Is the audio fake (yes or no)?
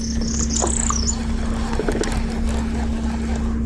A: no